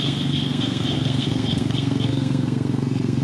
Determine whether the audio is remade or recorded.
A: remade